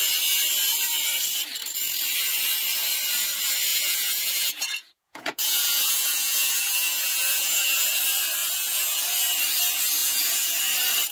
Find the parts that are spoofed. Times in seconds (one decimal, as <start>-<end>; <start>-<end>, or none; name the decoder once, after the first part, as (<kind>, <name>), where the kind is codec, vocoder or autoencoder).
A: 3.7-8.0 (vocoder, Vocos); 8.4-9.0; 10.0-10.6